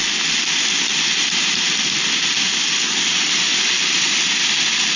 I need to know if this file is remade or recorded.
remade